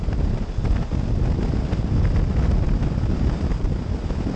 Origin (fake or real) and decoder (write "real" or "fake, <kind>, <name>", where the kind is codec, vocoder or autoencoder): real